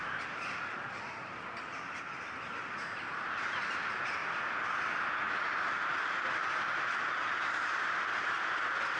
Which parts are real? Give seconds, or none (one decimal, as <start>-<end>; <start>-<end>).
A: 4.2-5.3; 6.5-9.0